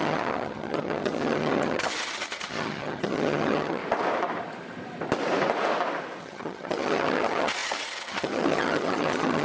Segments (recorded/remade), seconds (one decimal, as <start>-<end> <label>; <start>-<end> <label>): 0.0-3.8 remade; 3.8-6.2 recorded; 6.2-9.4 remade